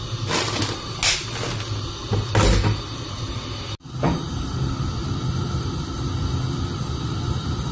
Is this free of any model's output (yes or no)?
yes